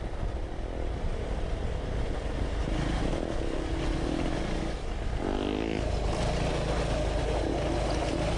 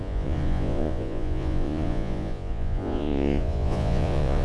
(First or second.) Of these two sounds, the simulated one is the second